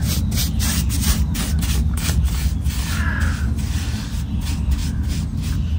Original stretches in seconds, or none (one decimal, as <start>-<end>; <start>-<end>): 0.0-5.8